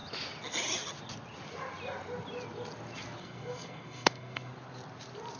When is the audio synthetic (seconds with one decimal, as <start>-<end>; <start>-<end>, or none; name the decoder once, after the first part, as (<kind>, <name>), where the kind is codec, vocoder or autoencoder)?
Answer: 3.2-4.5 (codec, SNAC)